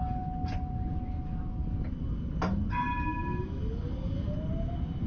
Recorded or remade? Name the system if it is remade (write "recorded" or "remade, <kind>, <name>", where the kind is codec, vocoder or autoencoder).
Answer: recorded